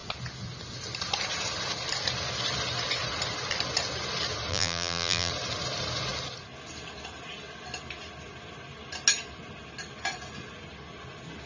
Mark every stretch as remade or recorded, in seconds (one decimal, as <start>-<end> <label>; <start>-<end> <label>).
0.0-4.5 recorded; 4.5-5.3 remade; 5.3-11.5 recorded